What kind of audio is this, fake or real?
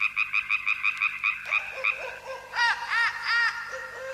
real